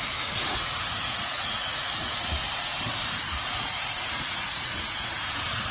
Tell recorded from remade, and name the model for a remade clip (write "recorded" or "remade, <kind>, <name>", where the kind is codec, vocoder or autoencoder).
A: remade, vocoder, Vocos